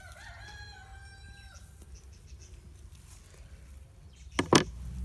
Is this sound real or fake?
real